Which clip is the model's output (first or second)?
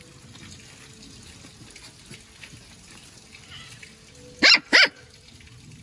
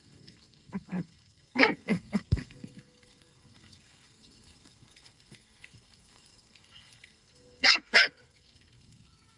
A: second